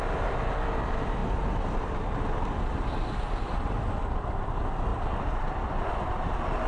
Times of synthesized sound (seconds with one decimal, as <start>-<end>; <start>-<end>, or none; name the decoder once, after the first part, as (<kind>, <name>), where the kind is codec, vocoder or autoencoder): none